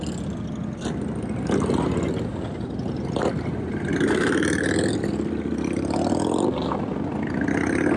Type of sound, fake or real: real